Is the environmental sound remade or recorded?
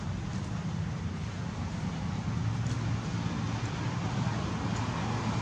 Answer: recorded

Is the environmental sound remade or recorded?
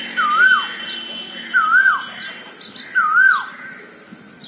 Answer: recorded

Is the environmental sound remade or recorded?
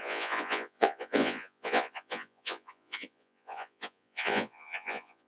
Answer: remade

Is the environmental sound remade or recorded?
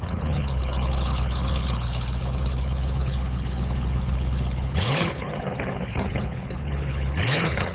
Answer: remade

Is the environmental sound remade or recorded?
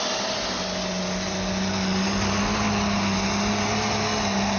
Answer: recorded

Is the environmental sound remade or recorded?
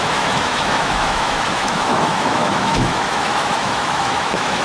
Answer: remade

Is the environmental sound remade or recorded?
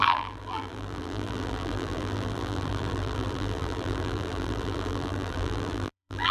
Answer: remade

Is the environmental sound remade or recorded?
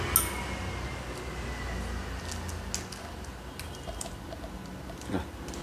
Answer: recorded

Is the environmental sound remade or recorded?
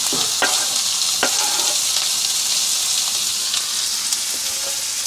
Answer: recorded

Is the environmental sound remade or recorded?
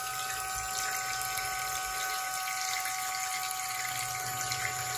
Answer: recorded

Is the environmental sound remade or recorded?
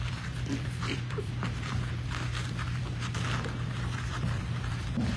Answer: remade